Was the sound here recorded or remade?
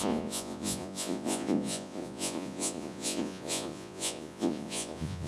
remade